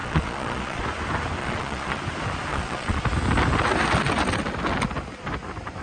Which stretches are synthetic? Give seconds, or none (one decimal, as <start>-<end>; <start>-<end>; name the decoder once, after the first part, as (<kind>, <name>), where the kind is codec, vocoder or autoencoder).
0.0-0.8 (vocoder, Vocos); 1.4-2.0; 2.5-3.0